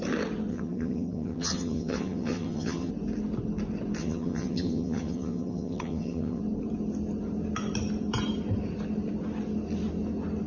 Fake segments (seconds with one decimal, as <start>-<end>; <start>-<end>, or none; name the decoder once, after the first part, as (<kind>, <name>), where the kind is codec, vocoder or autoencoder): 0.5-2.9 (vocoder, HiFi-GAN); 4.0-6.4